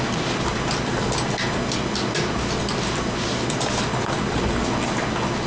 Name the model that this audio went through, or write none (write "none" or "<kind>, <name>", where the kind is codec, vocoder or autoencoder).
none